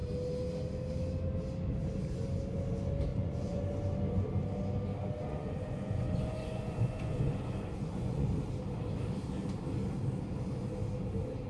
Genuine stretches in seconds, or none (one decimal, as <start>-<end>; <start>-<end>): 0.0-3.1; 3.6-5.2; 8.3-11.5